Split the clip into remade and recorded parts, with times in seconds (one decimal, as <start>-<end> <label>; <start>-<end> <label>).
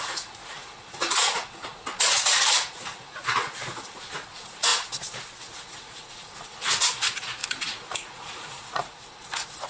0.0-4.7 remade; 4.7-5.4 recorded; 5.4-9.7 remade